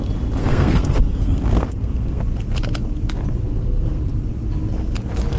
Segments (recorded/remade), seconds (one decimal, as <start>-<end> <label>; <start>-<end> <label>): 0.0-0.4 recorded; 0.4-2.2 remade; 2.2-3.5 recorded; 3.5-4.0 remade; 4.0-5.4 recorded